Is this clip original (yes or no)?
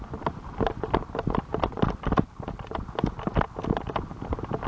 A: yes